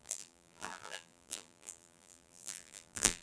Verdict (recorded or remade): remade